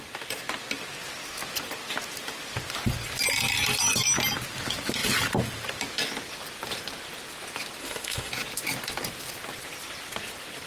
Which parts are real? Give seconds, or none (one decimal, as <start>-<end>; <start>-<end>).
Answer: 0.0-7.8; 8.3-10.7